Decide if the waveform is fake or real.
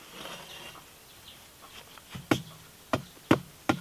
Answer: real